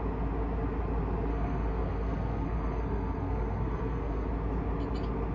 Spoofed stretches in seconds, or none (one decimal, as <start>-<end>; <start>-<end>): 1.3-4.3